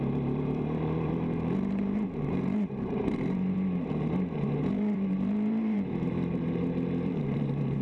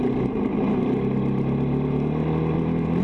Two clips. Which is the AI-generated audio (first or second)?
first